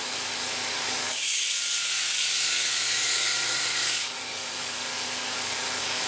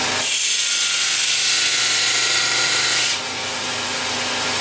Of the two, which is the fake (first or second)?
first